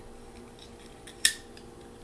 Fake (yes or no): no